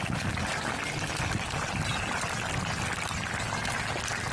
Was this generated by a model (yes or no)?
no